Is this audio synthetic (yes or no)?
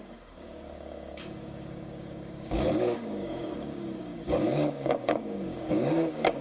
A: yes